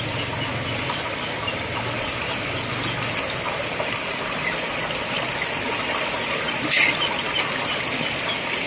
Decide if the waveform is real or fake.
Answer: real